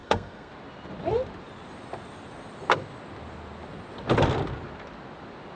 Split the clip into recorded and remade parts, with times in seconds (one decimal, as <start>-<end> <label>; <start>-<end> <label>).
0.0-0.5 remade; 0.5-5.6 recorded